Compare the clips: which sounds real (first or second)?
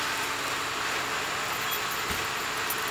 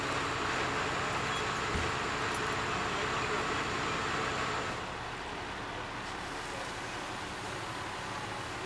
second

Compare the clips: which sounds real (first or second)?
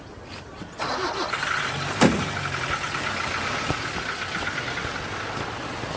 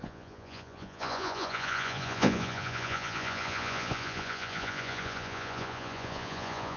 first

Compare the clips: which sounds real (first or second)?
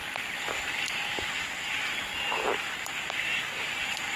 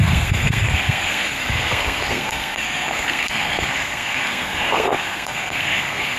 first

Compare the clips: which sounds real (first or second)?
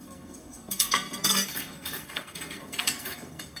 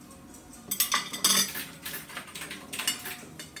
second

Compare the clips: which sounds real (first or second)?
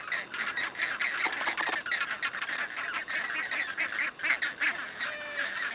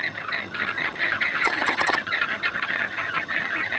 first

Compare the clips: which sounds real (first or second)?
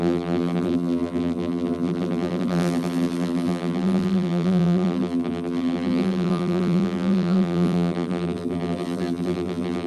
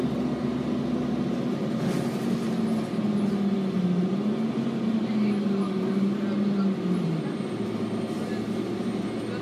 second